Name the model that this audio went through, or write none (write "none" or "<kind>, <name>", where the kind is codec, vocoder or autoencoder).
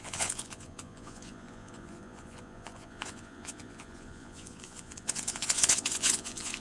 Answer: vocoder, Vocos